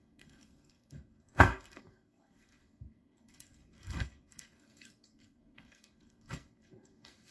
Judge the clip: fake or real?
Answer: fake